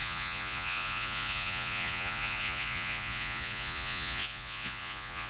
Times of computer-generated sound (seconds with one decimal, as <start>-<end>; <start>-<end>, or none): 0.0-5.3